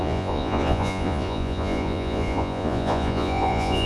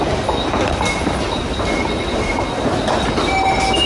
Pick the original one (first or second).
second